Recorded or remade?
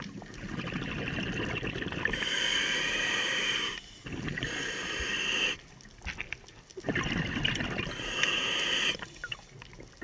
recorded